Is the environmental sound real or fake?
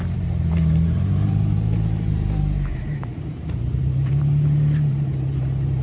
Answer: fake